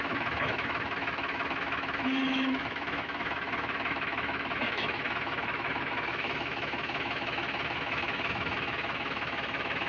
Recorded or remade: remade